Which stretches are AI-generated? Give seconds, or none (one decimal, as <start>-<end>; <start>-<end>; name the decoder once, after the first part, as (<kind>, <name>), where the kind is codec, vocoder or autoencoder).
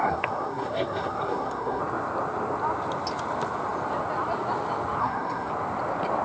0.0-1.8 (codec, SNAC); 5.0-5.5